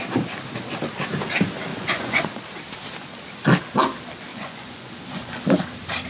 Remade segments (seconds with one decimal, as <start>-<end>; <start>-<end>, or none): 1.7-2.4; 4.3-5.4